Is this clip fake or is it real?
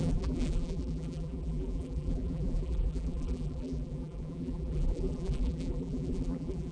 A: fake